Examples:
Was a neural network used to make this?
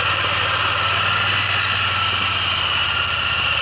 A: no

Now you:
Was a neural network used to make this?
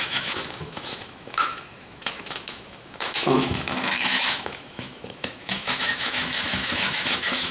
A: yes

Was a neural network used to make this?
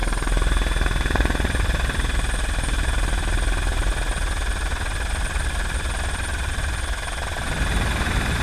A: no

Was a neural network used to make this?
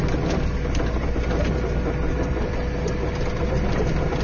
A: no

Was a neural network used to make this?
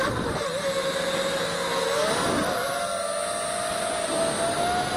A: no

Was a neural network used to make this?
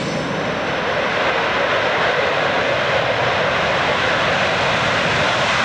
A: no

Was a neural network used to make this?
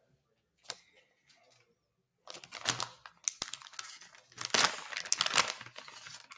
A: no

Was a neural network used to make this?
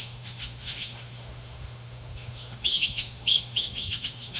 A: yes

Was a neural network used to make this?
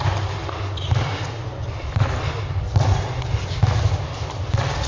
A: no